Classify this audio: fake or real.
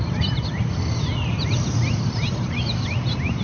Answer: real